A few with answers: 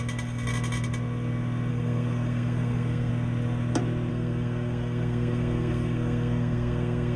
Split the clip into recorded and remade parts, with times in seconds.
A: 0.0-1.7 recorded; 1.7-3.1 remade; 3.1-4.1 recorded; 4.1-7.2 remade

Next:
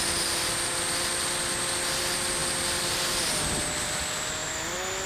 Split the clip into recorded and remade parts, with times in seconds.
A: 0.0-5.1 recorded

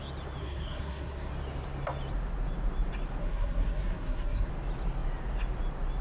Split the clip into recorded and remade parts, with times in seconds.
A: 0.0-0.4 recorded; 0.4-1.3 remade; 1.3-3.2 recorded; 3.2-4.5 remade; 4.5-6.0 recorded